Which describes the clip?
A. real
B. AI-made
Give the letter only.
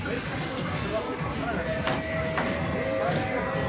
A